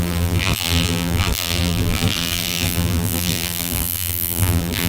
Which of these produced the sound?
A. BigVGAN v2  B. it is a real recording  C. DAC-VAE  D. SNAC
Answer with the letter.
A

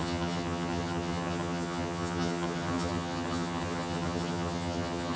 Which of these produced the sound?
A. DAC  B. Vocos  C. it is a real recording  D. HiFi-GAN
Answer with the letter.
D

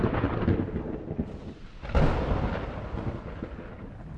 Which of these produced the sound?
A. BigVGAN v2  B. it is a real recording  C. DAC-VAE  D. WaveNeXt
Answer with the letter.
B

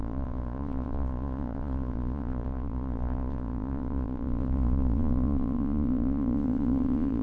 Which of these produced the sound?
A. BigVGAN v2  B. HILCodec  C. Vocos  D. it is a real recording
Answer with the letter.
C